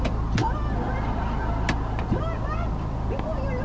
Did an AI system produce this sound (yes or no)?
no